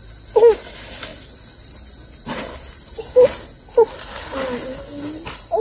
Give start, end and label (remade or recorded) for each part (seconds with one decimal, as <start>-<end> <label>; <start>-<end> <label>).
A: 0.0-5.6 recorded